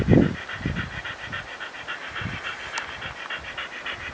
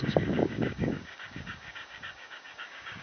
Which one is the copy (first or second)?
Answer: second